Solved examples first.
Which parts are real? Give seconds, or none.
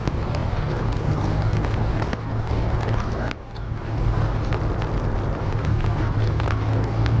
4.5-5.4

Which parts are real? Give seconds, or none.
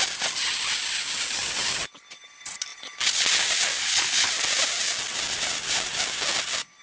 0.0-3.8; 4.3-6.8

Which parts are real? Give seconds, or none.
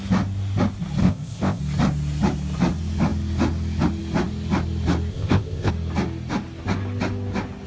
0.0-1.0; 1.6-5.1; 5.7-7.7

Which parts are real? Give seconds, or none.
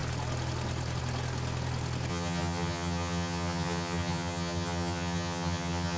0.0-2.1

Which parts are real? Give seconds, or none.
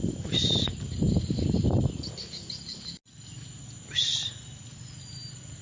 0.0-5.6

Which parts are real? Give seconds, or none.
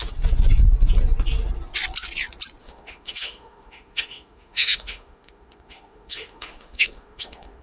0.0-2.6